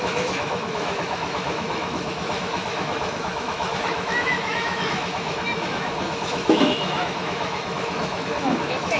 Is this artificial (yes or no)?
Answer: yes